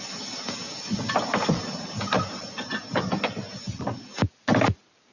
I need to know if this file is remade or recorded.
recorded